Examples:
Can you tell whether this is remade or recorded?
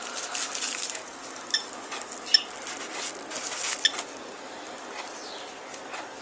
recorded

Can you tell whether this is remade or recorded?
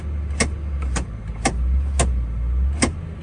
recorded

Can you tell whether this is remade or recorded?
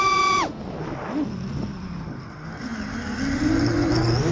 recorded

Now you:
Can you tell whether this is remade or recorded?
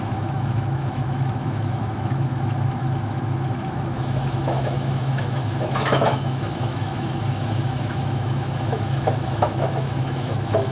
remade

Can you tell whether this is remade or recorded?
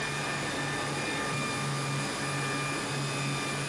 recorded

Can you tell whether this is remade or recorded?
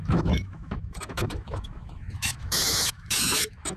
remade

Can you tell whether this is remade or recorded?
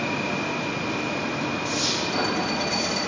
recorded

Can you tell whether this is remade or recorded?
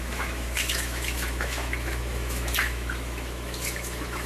remade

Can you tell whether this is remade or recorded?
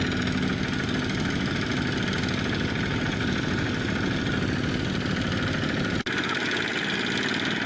recorded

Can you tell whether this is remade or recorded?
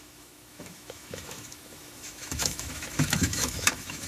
remade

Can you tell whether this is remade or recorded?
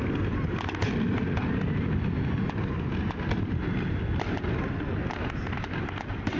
recorded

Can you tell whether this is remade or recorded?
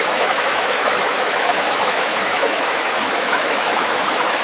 remade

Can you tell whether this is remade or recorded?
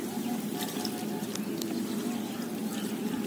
recorded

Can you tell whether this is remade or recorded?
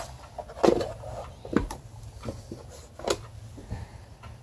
recorded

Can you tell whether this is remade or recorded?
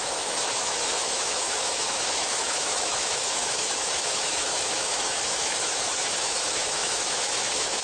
remade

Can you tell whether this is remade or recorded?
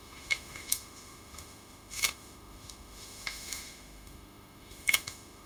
remade